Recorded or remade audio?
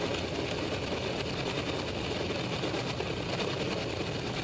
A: recorded